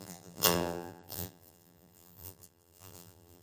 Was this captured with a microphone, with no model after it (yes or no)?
no